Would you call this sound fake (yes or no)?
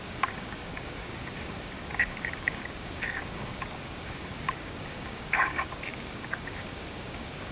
yes